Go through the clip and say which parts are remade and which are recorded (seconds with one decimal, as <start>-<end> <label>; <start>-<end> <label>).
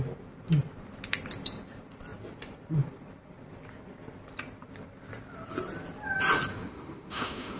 0.0-6.5 recorded; 6.5-7.6 remade